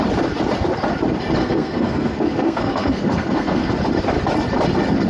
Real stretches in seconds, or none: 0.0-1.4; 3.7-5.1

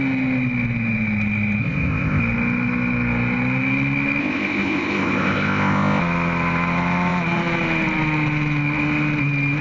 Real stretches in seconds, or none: 0.0-1.6; 2.2-4.2; 6.0-9.6

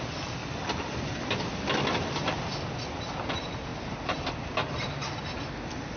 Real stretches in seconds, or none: 0.0-6.0

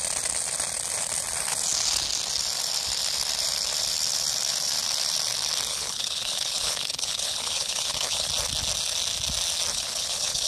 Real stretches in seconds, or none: 0.0-5.7; 8.3-9.7

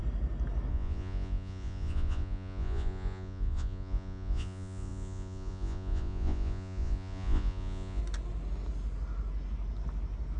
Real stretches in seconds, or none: 0.0-0.7; 8.0-10.4

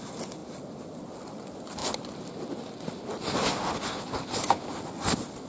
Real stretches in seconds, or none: 0.0-0.4; 1.0-1.8; 3.3-5.5